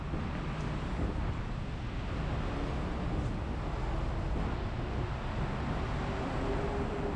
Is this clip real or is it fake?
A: real